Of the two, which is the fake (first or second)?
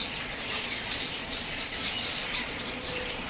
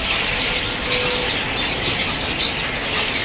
first